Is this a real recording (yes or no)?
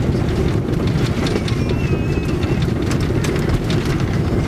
yes